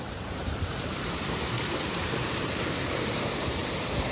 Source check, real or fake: fake